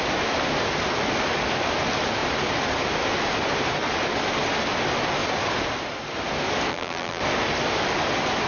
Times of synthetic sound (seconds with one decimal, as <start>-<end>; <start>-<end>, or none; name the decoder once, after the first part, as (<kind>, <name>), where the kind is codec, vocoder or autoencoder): 6.7-7.2 (vocoder, BigVGAN v2)